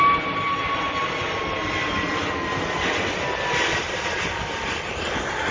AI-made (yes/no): no